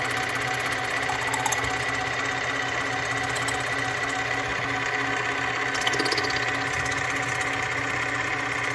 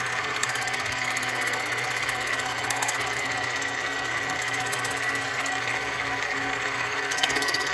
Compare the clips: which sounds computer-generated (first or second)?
second